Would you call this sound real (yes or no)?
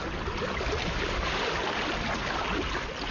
yes